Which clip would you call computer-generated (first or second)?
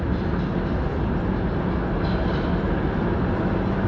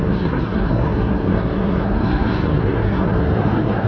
second